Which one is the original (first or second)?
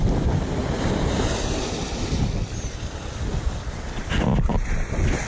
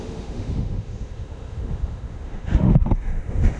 first